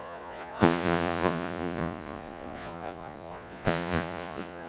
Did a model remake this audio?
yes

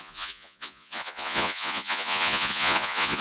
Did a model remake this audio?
yes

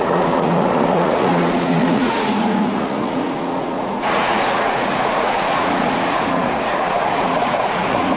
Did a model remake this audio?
yes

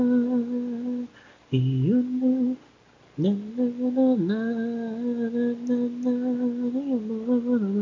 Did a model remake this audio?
no